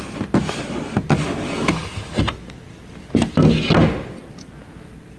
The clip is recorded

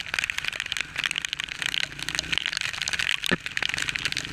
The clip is recorded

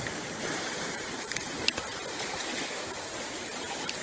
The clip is remade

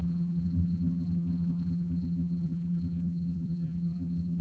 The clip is remade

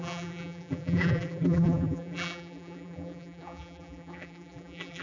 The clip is remade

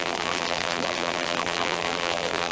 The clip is remade